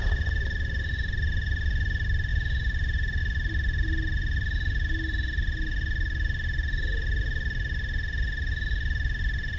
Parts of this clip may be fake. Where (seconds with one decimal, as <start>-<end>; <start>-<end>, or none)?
0.0-1.1; 2.3-3.2